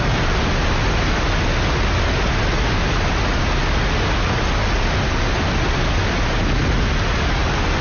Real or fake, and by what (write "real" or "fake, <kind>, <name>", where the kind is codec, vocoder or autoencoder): real